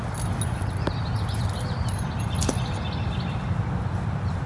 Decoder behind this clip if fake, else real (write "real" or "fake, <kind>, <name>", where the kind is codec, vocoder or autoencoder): real